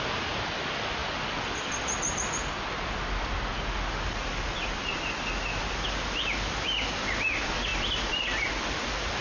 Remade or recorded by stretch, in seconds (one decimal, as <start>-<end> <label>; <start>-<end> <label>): 0.0-9.2 recorded